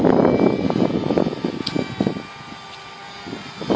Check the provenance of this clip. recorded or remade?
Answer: recorded